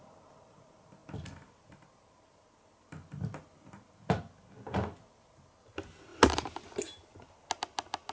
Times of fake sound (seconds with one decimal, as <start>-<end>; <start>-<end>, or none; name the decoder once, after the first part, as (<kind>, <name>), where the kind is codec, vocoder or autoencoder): none